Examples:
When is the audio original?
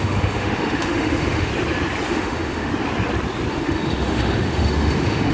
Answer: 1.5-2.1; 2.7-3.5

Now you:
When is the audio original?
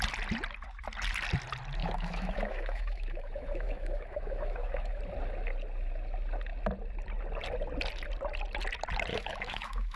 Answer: 0.0-1.8; 5.0-9.1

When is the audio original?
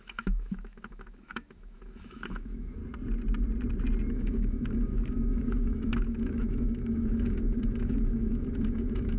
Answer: 2.8-4.1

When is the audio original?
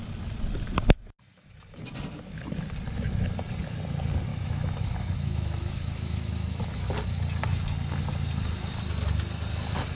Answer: 0.0-4.3; 6.8-9.9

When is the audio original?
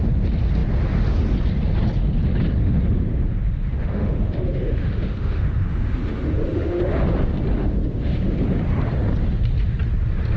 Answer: 0.0-2.6; 6.8-7.6; 8.4-10.4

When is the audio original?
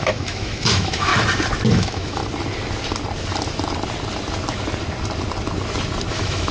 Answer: 1.1-1.7; 2.2-6.1